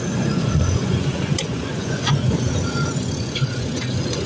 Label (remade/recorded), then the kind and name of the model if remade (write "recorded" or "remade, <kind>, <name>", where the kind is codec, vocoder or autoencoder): remade, vocoder, Vocos